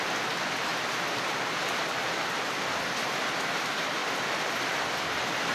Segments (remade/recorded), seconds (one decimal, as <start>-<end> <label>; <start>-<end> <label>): 0.0-0.7 recorded; 0.7-2.8 remade; 2.8-5.5 recorded